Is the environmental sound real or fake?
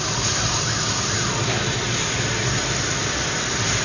real